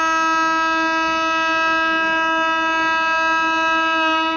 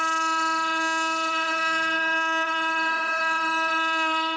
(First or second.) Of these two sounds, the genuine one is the first